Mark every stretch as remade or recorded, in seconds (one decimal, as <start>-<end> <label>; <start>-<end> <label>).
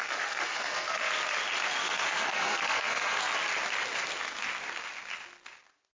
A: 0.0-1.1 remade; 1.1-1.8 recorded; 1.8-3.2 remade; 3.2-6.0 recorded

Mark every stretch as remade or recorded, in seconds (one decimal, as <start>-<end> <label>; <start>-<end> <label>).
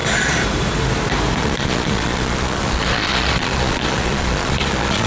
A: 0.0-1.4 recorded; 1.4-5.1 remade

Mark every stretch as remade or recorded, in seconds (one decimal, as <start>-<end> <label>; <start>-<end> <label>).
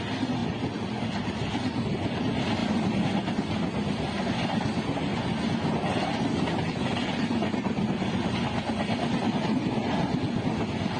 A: 0.0-11.0 recorded